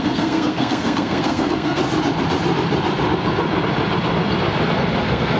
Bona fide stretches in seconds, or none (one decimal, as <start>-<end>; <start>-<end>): 1.8-5.0